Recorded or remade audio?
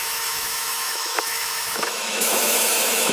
remade